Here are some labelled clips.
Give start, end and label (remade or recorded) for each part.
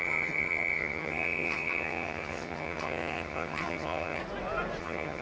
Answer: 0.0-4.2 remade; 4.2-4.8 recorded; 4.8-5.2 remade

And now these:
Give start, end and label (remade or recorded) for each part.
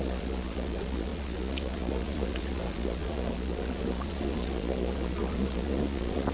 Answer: 0.0-6.3 remade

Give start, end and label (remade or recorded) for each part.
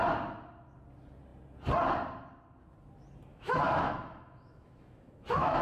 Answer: 0.0-3.3 recorded; 3.3-5.6 remade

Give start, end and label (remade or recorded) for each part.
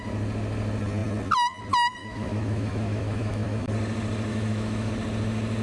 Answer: 0.0-2.0 recorded; 2.0-3.7 remade; 3.7-4.3 recorded; 4.3-4.9 remade; 4.9-5.6 recorded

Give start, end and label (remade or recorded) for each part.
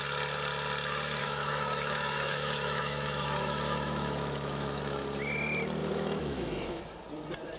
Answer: 0.0-1.2 recorded; 1.2-4.8 remade; 4.8-5.8 recorded; 5.8-6.8 remade; 6.8-7.6 recorded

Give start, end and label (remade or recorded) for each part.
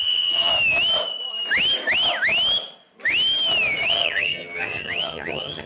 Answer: 0.0-0.5 remade; 0.5-3.9 recorded; 3.9-5.7 remade